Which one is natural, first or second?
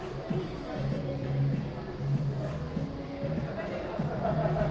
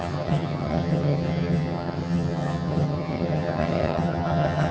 first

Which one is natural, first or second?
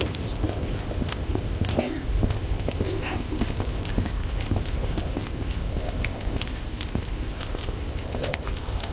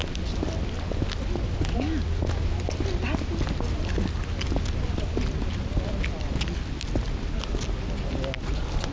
second